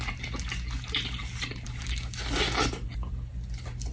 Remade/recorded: recorded